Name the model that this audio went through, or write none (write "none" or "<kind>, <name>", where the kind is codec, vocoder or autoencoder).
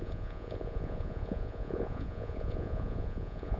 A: vocoder, Vocos